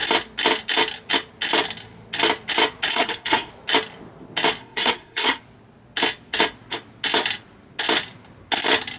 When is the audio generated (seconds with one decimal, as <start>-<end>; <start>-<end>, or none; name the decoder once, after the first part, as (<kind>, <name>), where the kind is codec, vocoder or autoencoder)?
2.9-3.5 (codec, SNAC); 4.6-5.4